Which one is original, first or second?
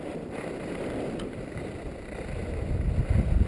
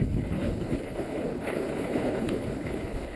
first